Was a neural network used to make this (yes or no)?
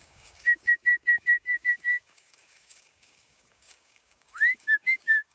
yes